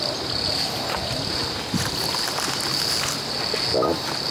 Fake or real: real